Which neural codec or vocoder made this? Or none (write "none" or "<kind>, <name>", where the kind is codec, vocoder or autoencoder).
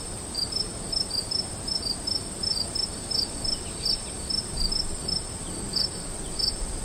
none